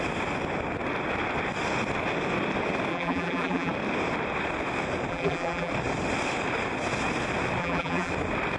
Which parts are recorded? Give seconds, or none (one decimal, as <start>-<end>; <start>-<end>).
0.0-2.9; 3.7-5.1; 5.7-7.6; 8.1-8.6

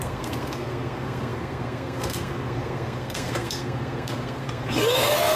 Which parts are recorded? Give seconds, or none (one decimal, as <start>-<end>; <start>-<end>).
none